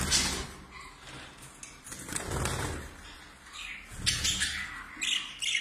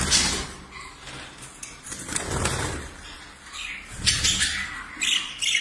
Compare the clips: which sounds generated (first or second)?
second